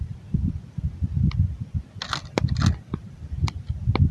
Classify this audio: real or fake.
real